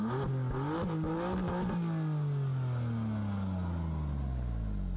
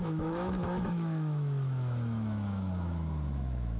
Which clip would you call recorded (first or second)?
first